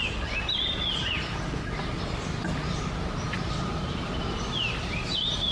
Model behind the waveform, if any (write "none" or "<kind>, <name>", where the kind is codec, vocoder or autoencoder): none